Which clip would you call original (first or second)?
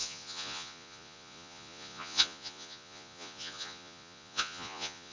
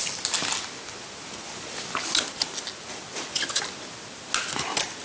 second